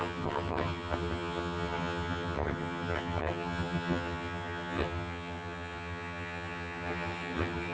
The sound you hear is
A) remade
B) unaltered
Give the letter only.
A